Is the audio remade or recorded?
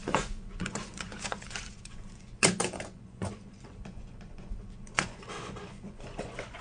remade